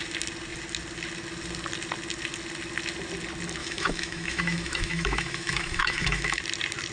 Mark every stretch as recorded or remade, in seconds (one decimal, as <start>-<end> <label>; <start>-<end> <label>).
0.0-3.6 recorded; 3.6-6.4 remade; 6.4-6.9 recorded